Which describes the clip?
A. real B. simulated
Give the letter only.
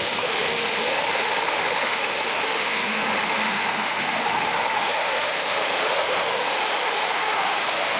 B